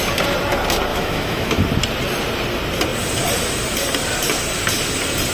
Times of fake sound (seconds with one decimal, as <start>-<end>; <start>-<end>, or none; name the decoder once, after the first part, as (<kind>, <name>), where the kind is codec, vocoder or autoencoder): 0.9-1.6 (autoencoder, DAC-VAE)